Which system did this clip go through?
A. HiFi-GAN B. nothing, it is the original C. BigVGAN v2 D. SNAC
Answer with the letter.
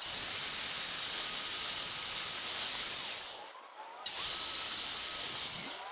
B